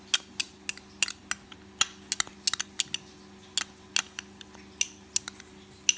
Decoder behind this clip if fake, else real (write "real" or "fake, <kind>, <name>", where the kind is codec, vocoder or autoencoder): real